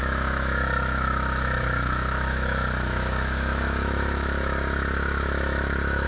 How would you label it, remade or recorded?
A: remade